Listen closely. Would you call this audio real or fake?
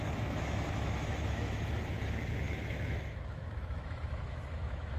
fake